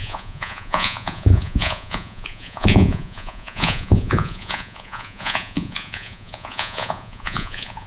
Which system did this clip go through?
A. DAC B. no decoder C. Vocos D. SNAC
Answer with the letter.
C